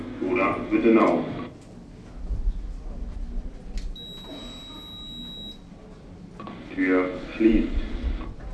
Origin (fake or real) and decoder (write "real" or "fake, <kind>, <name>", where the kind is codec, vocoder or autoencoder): real